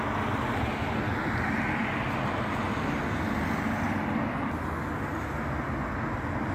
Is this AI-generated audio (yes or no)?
no